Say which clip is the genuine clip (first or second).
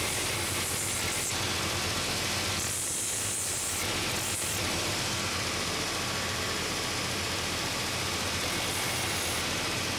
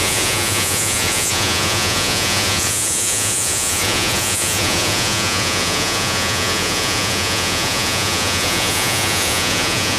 first